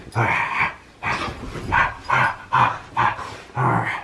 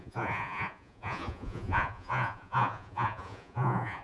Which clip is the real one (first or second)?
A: first